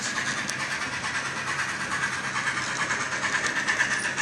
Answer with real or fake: real